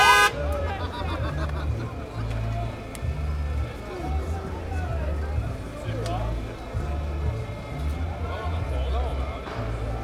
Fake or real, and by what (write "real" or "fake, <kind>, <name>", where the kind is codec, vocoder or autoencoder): real